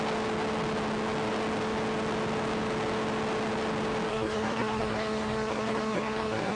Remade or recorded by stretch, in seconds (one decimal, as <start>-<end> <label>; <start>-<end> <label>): 0.0-4.1 recorded; 4.1-6.6 remade